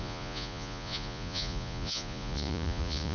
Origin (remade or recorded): remade